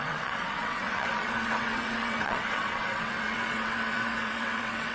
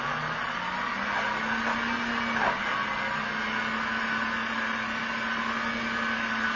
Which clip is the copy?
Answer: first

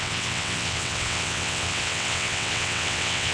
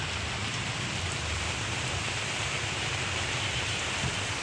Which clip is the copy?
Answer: first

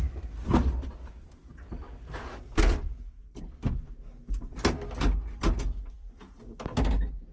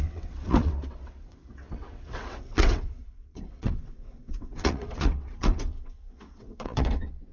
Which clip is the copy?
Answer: second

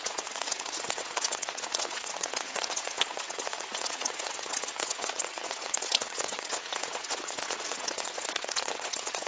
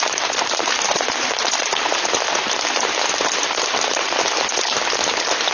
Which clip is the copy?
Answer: first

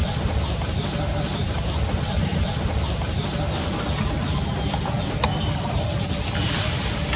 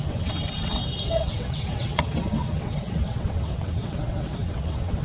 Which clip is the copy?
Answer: second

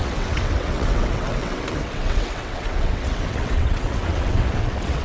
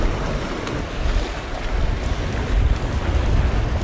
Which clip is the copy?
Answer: first